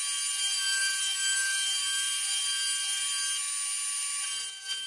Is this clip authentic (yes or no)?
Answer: yes